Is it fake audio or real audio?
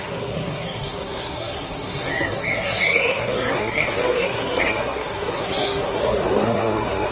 fake